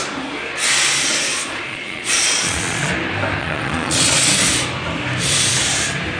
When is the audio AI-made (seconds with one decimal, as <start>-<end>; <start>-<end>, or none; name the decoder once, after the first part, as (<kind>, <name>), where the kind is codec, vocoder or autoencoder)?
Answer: 1.3-2.9 (vocoder, Vocos); 3.4-4.3